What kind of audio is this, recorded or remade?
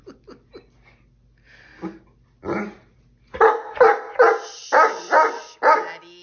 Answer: recorded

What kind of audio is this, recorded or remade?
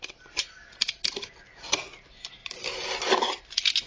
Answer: recorded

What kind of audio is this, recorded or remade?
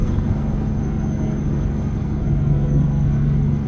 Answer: remade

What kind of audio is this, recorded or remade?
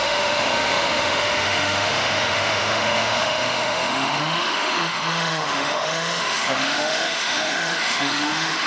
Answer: remade